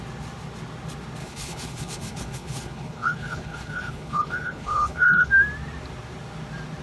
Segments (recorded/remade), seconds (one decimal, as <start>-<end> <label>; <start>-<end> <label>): 0.0-1.2 recorded; 1.2-5.3 remade; 5.3-6.8 recorded